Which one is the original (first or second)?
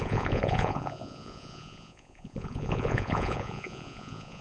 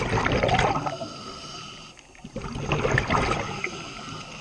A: second